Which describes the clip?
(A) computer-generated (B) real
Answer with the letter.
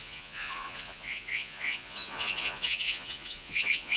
A